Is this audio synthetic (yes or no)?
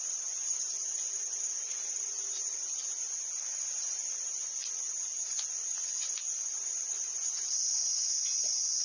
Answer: no